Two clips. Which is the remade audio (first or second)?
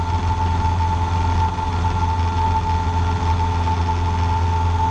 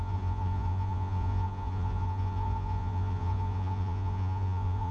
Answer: second